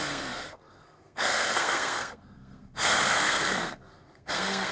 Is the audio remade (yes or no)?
yes